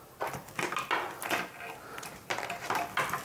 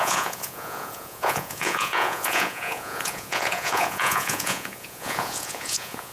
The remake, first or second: second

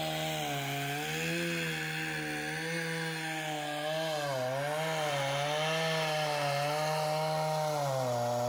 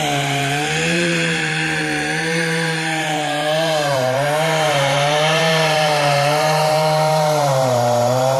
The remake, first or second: second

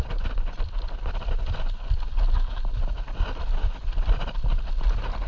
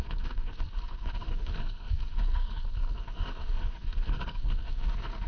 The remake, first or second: second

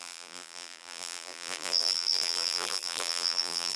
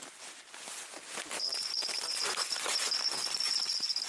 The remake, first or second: first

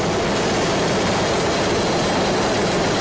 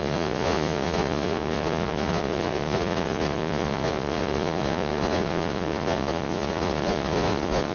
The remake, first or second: second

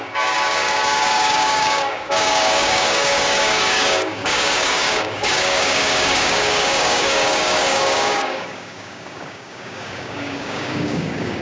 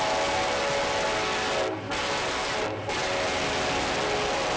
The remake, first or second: first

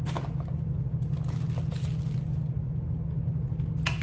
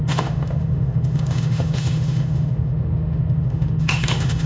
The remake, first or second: second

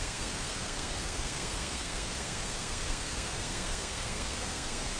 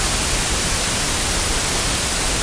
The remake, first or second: first